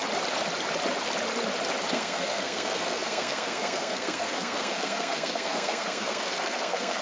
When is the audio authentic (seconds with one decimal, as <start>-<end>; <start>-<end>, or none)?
0.0-1.9